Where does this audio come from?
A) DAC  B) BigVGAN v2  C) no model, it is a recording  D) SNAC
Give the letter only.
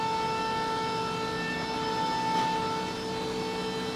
C